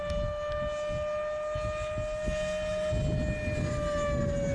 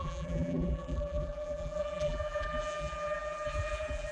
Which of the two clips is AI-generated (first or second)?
second